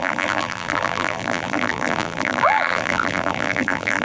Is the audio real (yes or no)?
no